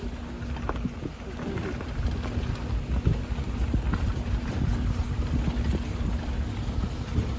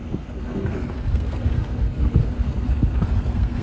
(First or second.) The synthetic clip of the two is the second